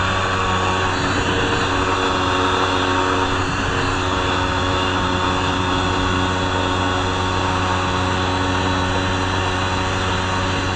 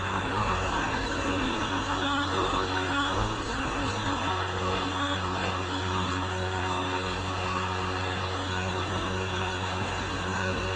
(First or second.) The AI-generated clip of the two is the second